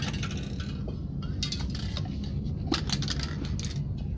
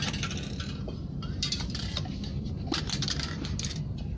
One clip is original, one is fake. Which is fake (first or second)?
second